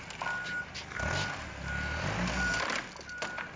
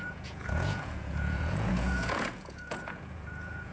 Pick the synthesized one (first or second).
second